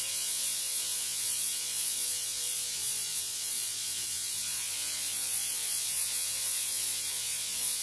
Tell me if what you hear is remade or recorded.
remade